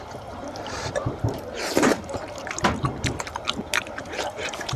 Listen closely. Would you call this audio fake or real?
fake